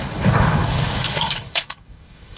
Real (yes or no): no